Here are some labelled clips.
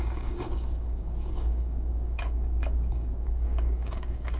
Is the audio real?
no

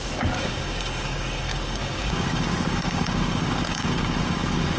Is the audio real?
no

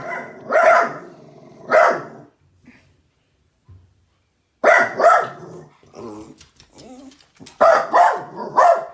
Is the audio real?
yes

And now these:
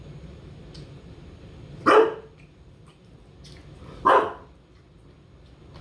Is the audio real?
yes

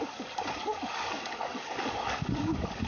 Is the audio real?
no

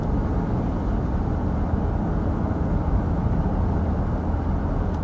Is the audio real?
yes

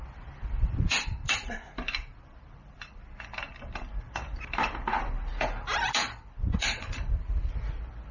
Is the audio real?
yes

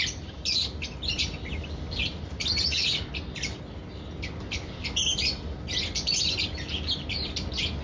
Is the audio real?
yes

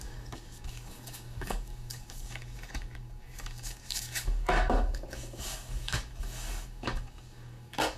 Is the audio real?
no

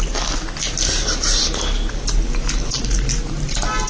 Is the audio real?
yes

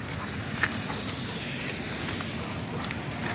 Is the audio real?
yes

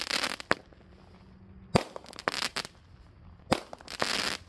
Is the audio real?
yes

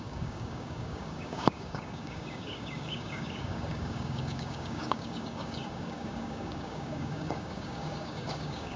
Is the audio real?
no